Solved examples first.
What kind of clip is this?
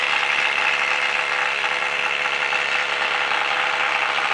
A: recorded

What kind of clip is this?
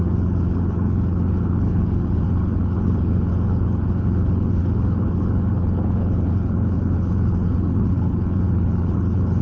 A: remade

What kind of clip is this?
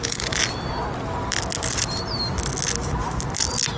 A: recorded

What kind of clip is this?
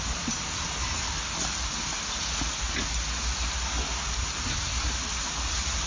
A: recorded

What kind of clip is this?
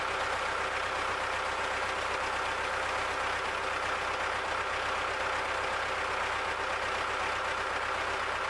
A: recorded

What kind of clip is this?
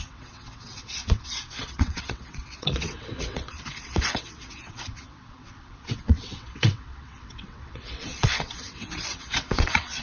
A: remade